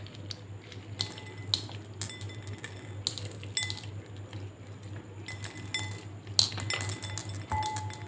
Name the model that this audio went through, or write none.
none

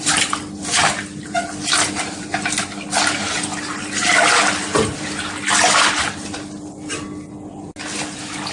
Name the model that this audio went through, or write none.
none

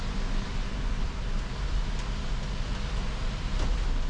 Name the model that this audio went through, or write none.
none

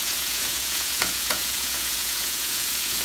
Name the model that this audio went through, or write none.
vocoder, Vocos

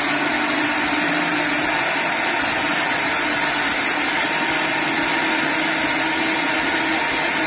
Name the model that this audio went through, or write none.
none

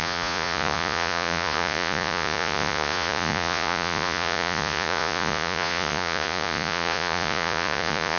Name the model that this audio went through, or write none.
vocoder, Vocos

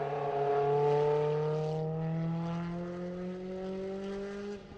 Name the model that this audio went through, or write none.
none